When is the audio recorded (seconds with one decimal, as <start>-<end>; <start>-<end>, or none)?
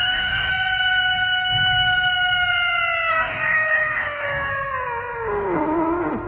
0.5-3.1; 4.5-6.3